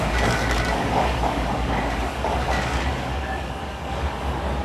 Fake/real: fake